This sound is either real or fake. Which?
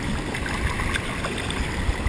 real